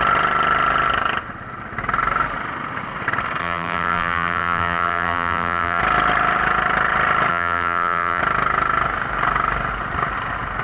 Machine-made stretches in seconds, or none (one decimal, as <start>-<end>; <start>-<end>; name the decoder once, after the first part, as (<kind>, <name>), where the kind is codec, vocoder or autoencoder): 3.4-5.8 (vocoder, BigVGAN v2); 7.3-8.2